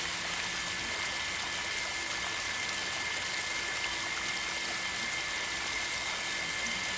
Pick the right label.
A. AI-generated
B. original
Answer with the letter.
B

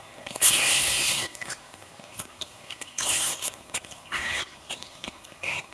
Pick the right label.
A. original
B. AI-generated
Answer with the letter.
B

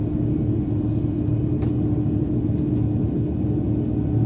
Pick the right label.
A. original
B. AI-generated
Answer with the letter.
A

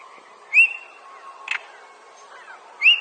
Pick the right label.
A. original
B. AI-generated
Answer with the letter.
A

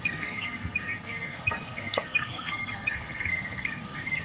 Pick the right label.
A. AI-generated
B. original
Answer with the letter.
A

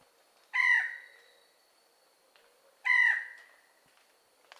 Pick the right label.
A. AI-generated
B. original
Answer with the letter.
B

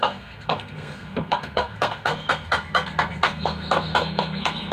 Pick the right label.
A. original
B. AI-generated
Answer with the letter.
B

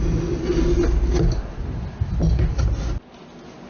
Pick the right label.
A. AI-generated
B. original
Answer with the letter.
B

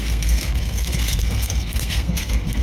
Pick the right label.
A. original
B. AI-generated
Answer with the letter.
B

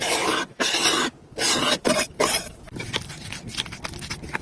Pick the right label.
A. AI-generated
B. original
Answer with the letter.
B